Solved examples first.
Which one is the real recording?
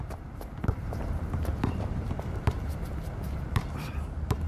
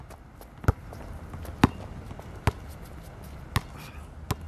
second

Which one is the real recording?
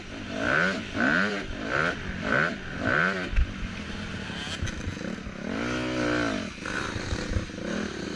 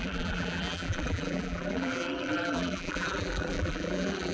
first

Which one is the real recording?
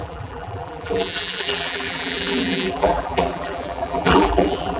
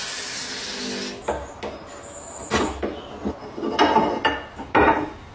second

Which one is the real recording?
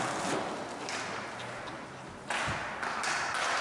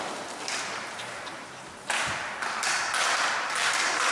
first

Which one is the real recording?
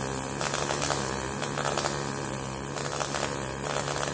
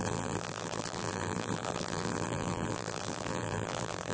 first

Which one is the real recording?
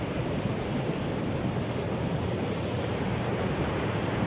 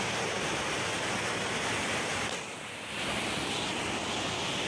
second